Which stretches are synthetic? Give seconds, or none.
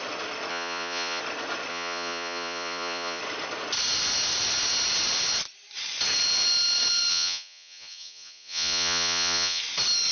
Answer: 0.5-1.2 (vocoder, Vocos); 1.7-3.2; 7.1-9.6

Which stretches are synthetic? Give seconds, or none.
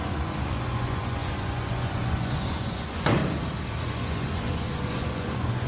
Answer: 0.0-3.2 (vocoder, Vocos); 3.8-5.7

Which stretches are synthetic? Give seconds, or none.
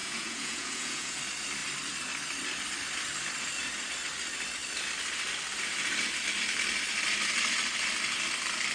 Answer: 0.0-1.2 (vocoder, Vocos)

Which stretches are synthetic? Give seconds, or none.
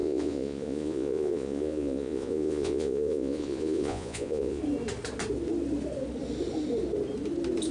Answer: 0.0-4.6 (vocoder, Vocos)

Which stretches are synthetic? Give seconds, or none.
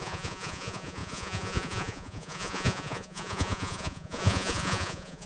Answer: 0.0-5.3 (vocoder, Vocos)